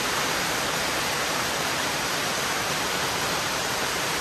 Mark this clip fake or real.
fake